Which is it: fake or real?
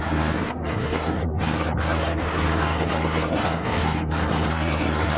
fake